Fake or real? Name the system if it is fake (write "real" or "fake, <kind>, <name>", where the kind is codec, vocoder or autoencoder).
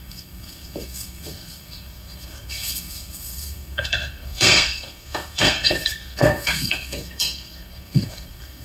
fake, codec, SNAC